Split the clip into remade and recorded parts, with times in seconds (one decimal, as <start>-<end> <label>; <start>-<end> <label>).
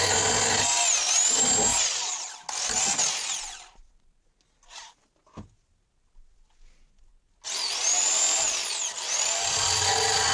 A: 0.0-1.7 recorded; 1.7-2.3 remade; 2.3-10.3 recorded